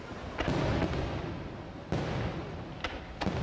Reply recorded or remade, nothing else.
recorded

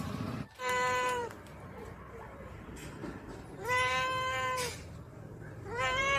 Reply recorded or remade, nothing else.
remade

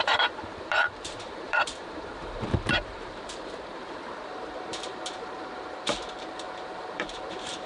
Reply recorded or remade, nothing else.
remade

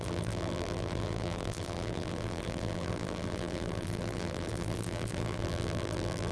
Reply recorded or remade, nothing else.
remade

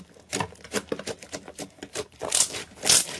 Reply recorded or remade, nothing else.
recorded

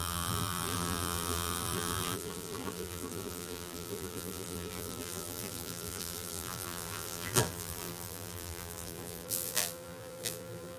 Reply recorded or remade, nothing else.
remade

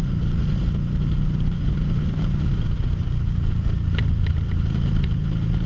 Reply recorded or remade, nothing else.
remade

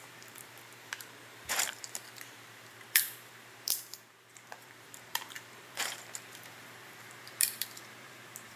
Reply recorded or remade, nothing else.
remade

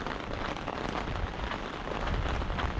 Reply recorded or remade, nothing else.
recorded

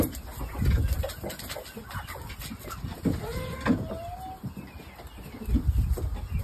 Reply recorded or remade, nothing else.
recorded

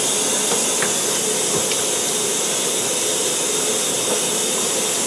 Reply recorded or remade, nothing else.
recorded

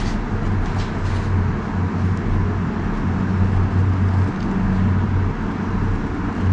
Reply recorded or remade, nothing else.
recorded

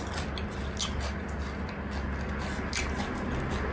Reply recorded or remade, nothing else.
recorded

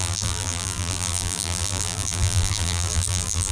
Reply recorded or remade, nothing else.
remade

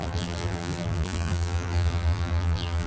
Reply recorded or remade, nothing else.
remade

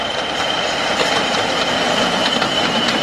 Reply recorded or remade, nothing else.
remade